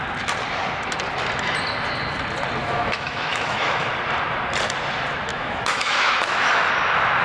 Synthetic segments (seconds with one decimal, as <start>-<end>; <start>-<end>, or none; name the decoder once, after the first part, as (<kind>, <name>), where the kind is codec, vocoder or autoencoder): 2.6-3.9 (autoencoder, DAC-VAE); 5.3-6.7